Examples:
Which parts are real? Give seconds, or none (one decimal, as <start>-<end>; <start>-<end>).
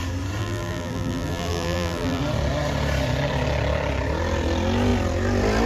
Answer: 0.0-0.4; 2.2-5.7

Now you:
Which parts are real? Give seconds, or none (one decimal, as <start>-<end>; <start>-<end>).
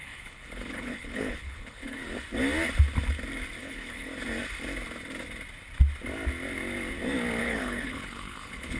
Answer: 2.0-3.6; 4.1-7.4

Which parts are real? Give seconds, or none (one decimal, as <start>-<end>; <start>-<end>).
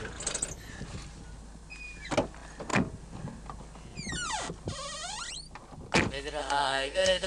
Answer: 0.0-6.4